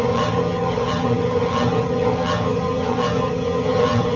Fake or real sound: fake